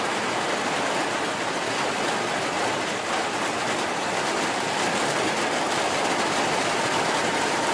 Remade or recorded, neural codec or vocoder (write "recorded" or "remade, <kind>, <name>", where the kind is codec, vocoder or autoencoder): remade, vocoder, BigVGAN v2